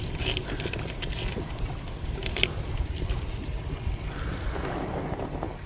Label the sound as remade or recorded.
recorded